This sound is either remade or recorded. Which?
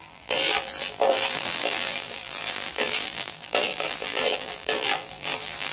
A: remade